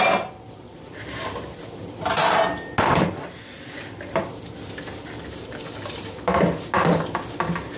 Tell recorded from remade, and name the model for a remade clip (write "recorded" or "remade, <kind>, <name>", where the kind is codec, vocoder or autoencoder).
recorded